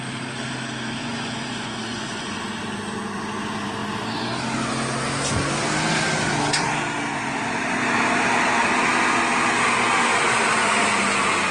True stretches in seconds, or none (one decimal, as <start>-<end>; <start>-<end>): 0.0-1.0; 2.4-11.5